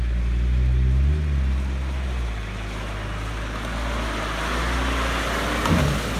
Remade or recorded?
recorded